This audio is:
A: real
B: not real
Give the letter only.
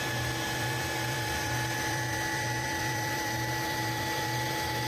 B